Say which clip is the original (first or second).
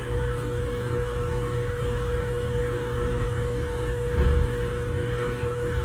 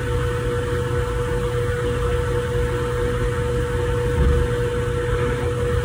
second